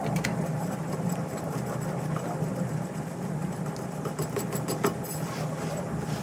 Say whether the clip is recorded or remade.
recorded